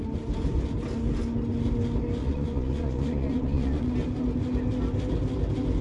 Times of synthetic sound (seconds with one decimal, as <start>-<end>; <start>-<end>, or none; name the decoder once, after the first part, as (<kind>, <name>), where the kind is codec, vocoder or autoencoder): 2.2-3.9 (vocoder, Vocos)